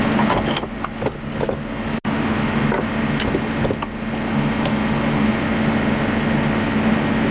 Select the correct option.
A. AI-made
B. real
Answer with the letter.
B